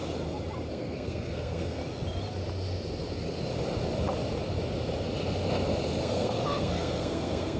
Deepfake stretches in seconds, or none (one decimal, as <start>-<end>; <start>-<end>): 0.7-1.8; 6.0-7.6